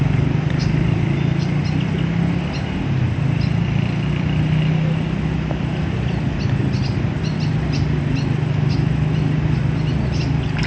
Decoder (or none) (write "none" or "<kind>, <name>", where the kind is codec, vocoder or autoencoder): none